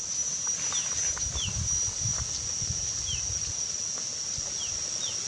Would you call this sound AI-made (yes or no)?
no